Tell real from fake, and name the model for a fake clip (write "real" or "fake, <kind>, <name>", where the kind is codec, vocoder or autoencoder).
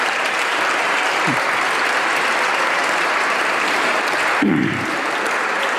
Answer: fake, vocoder, BigVGAN v2